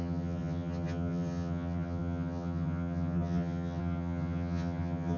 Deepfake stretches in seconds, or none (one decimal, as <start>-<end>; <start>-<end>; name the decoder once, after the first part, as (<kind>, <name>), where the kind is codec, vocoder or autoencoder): 0.0-5.2 (vocoder, HiFi-GAN)